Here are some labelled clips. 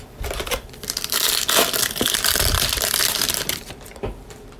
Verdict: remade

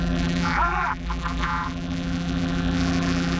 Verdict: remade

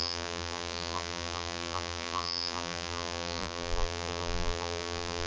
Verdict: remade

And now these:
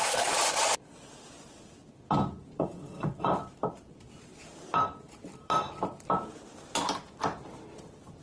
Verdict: remade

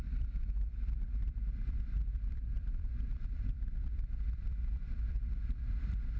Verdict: remade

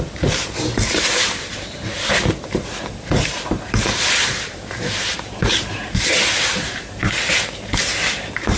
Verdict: remade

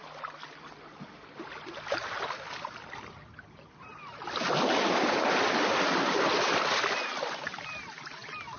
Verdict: recorded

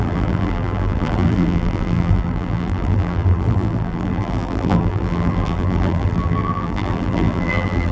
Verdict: remade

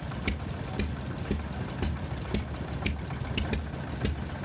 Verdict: recorded